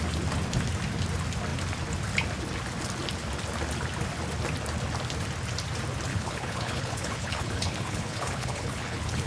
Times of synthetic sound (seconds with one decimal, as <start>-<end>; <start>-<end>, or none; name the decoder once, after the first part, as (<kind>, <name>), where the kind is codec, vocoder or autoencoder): 6.1-9.3 (codec, HILCodec)